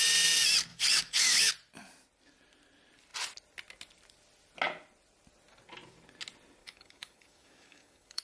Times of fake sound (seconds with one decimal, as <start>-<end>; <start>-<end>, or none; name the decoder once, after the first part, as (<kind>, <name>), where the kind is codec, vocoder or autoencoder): 0.7-1.5 (codec, DAC); 6.6-8.2